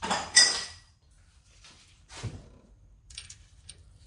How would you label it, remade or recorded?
remade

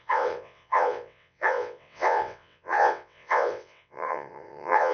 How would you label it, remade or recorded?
remade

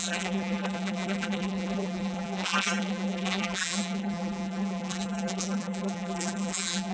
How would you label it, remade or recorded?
remade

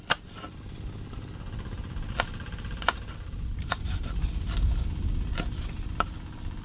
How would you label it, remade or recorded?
recorded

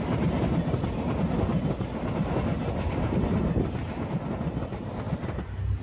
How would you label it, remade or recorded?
recorded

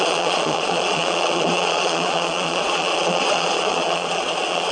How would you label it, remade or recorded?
remade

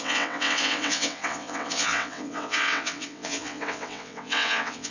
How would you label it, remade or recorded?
remade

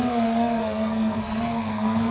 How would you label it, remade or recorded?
remade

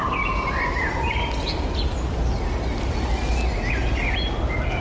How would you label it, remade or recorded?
recorded